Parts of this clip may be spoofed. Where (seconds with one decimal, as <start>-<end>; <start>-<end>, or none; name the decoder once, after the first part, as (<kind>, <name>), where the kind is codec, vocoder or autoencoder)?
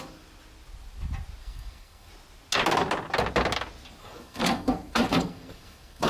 1.4-2.1 (codec, SNAC); 4.0-6.1